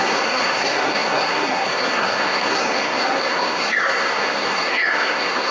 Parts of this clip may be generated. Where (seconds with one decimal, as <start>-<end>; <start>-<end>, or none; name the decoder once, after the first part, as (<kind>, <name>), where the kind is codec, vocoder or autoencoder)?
0.0-5.5 (codec, SNAC)